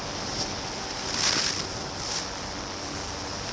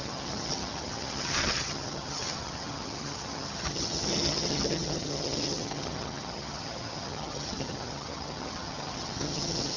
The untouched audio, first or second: first